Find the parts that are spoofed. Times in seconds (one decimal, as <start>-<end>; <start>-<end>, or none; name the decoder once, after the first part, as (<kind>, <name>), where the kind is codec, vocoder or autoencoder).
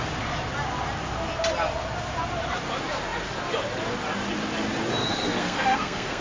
5.0-6.2 (codec, SNAC)